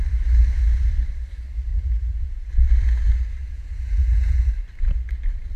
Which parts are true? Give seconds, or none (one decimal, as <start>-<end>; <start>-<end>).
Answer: 0.0-1.7; 2.5-3.4; 4.5-5.6